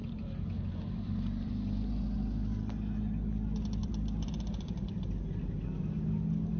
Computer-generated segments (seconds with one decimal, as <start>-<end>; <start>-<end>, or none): 0.0-1.5; 3.8-5.8